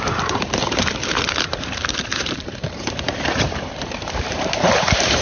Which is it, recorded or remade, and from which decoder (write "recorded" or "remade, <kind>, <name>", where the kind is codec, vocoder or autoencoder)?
remade, vocoder, BigVGAN v2